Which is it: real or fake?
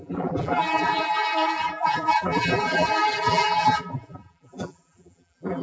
fake